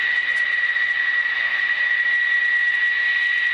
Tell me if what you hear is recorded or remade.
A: recorded